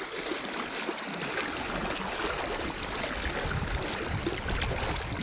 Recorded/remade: recorded